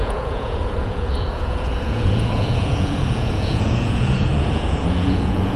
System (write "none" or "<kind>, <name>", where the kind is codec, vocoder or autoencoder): vocoder, Vocos